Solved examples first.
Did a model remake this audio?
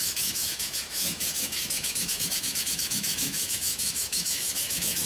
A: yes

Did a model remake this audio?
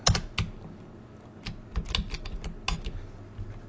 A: no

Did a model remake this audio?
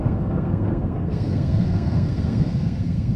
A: yes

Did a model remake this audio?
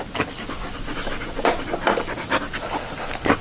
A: no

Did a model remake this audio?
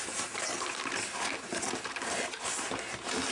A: no